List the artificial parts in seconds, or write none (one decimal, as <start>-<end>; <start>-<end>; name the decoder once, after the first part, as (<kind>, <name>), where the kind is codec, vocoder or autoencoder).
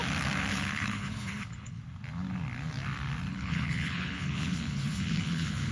0.5-1.8 (codec, HILCodec); 3.3-5.7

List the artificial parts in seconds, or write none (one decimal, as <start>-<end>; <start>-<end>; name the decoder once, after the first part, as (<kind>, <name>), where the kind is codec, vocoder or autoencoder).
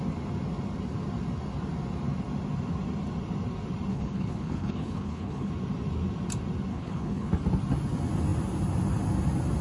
3.9-5.5 (codec, HILCodec); 6.7-7.3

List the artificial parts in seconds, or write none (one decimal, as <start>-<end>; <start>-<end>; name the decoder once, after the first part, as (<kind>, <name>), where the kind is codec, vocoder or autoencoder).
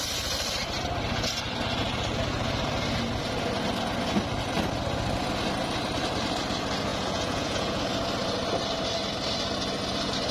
6.9-7.8 (vocoder, Vocos)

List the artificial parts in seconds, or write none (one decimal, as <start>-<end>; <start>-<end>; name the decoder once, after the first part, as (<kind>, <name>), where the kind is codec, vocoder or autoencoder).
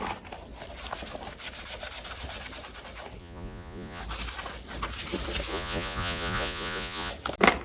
3.2-4.0 (vocoder, Vocos); 5.5-7.1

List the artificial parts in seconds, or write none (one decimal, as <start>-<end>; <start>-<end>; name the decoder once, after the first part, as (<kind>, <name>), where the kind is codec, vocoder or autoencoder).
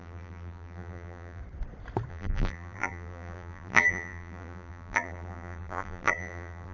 0.0-1.4 (vocoder, BigVGAN v2); 2.1-6.7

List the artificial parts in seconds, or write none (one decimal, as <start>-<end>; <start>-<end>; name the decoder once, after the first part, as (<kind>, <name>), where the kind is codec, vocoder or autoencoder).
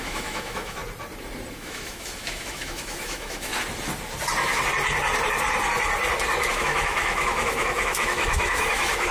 0.0-0.8 (autoencoder, DAC-VAE); 1.5-3.5; 6.5-9.1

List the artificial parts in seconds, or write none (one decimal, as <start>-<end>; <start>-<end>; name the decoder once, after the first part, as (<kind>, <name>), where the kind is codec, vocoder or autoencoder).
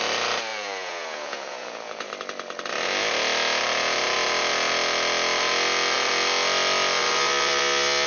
0.5-2.1 (vocoder, Vocos)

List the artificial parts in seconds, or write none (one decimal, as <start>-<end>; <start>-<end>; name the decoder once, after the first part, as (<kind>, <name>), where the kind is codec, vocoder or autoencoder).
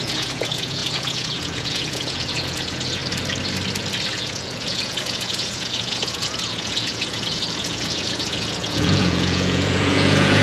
0.0-3.0 (vocoder, Vocos); 4.1-10.4